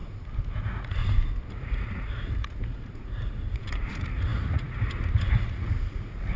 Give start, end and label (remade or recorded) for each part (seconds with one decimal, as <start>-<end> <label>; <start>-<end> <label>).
0.0-0.6 recorded; 0.6-1.0 remade; 1.0-1.5 recorded; 1.5-6.4 remade